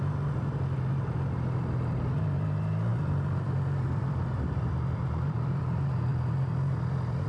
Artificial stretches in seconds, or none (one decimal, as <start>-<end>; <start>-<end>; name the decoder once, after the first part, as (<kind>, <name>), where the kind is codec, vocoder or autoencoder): 2.9-5.6 (vocoder, BigVGAN v2); 6.1-7.3